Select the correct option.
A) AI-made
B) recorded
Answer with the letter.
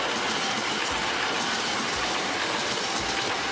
B